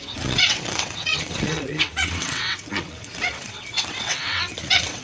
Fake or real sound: fake